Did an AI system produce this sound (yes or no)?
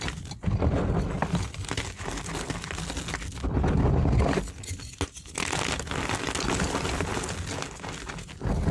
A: no